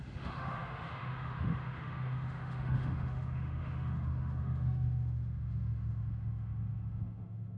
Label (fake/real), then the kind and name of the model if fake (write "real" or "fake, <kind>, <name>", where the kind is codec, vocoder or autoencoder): fake, autoencoder, DAC-VAE